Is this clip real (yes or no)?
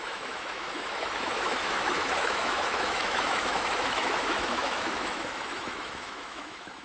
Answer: no